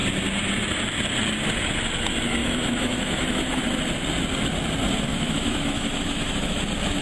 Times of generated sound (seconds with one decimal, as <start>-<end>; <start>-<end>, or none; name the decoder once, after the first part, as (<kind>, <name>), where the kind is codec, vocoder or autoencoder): 2.4-3.6 (autoencoder, DAC-VAE); 5.1-6.6